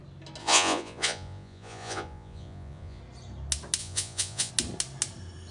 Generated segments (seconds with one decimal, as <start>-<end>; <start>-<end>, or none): 0.4-3.0; 3.8-4.5